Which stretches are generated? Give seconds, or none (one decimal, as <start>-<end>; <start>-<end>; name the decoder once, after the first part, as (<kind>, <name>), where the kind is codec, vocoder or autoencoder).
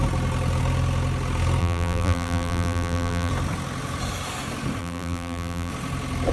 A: 1.6-3.3 (vocoder, BigVGAN v2); 4.8-5.7